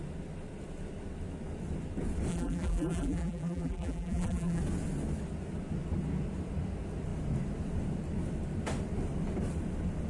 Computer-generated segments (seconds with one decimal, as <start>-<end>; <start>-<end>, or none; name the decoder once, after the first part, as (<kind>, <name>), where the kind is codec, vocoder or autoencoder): 2.3-4.6 (vocoder, BigVGAN v2)